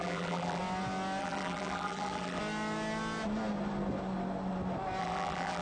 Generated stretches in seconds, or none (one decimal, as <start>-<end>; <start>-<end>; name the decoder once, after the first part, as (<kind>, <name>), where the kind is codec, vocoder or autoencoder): 0.0-0.6 (vocoder, BigVGAN v2); 1.2-2.4; 5.0-5.6